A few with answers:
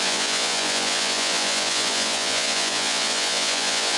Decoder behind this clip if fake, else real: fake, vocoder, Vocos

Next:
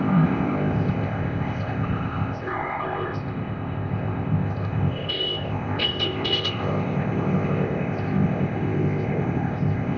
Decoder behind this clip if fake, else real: fake, codec, ZipCodec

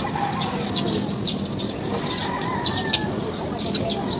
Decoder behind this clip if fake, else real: real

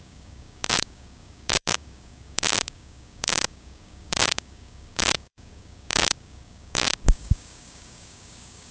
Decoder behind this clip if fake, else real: fake, codec, DAC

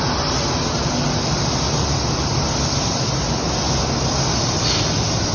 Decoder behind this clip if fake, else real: real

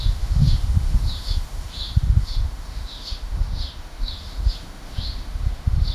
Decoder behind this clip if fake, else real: fake, autoencoder, DAC-VAE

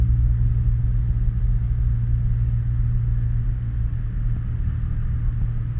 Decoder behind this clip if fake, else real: real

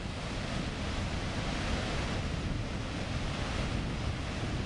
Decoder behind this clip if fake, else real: real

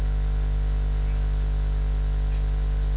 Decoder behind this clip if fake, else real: real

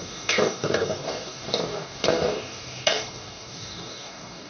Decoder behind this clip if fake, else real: fake, codec, DAC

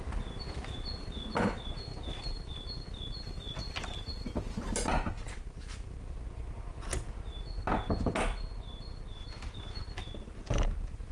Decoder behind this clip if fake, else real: real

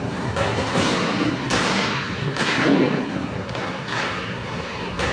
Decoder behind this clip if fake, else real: fake, codec, SNAC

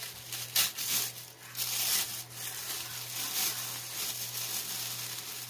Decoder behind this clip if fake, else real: real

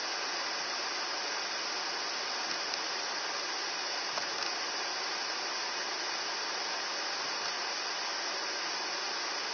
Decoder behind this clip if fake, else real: real